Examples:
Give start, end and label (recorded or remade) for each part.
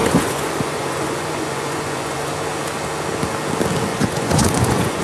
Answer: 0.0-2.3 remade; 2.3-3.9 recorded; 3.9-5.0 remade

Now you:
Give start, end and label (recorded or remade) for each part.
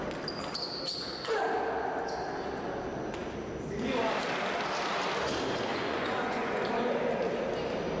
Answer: 0.0-5.7 recorded; 5.7-6.6 remade; 6.6-8.0 recorded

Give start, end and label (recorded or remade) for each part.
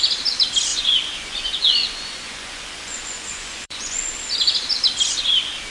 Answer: 0.0-0.7 recorded; 0.7-4.1 remade; 4.1-5.7 recorded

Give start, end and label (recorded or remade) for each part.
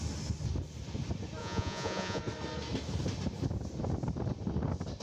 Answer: 0.0-1.4 recorded; 1.4-2.2 remade; 2.2-5.0 recorded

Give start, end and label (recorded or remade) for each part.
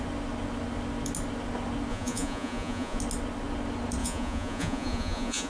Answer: 0.0-1.9 recorded; 1.9-3.0 remade; 3.0-4.0 recorded; 4.0-5.5 remade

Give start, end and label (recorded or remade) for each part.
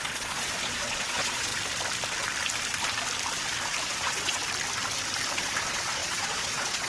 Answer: 0.0-1.5 remade; 1.5-3.8 recorded; 3.8-4.4 remade; 4.4-5.4 recorded; 5.4-6.9 remade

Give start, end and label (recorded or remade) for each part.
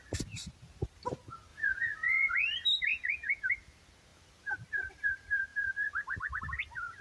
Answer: 0.0-1.5 recorded; 1.5-2.3 remade; 2.3-2.9 recorded; 2.9-3.4 remade; 3.4-7.0 recorded